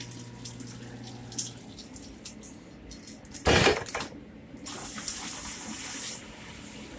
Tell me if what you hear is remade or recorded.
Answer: recorded